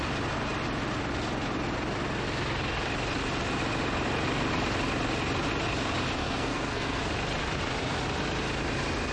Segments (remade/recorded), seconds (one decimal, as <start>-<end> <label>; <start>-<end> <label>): 0.0-6.2 recorded; 6.2-7.1 remade; 7.1-9.1 recorded